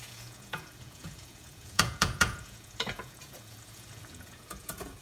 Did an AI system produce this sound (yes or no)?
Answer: yes